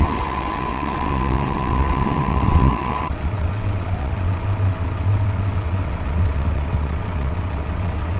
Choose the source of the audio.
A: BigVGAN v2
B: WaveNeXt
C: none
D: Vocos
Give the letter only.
B